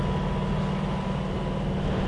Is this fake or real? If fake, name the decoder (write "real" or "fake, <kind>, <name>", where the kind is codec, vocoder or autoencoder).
real